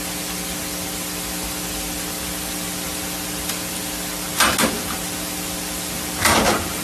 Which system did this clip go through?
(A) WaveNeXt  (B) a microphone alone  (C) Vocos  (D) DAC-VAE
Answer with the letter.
B